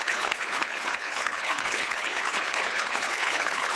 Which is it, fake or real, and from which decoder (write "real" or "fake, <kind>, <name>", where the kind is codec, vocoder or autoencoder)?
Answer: fake, codec, HILCodec